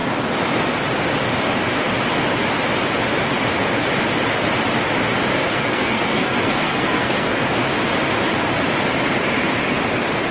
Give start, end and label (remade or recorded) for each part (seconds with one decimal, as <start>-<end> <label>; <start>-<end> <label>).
0.0-5.3 recorded; 5.3-7.5 remade; 7.5-10.3 recorded